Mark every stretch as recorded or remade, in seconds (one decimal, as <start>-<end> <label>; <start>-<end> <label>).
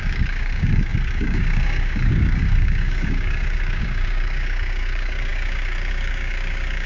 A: 0.0-6.9 remade